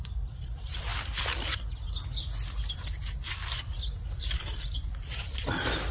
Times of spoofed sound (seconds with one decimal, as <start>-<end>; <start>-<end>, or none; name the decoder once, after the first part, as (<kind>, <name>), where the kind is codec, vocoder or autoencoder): 0.0-0.9 (vocoder, BigVGAN v2); 4.2-5.9